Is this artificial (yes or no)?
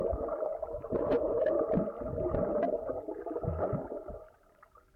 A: no